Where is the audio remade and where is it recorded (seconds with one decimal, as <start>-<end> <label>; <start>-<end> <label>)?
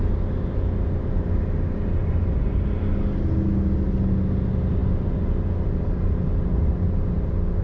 0.0-7.6 recorded